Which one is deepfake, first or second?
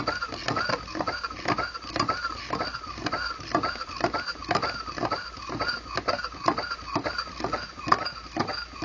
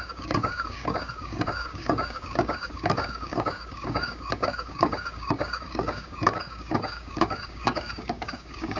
second